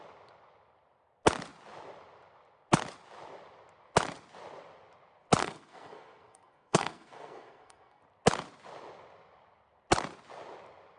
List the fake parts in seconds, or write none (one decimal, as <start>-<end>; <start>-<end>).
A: 5.4-8.0